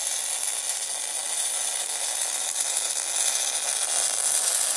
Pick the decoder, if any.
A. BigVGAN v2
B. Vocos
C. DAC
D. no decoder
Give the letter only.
D